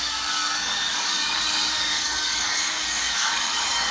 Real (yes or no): no